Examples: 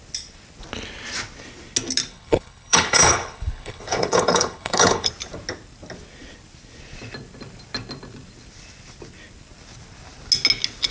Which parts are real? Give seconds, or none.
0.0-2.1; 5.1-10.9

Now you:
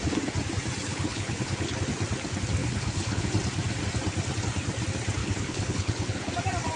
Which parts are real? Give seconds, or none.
0.0-0.9; 1.8-2.6; 3.3-5.2; 6.3-6.8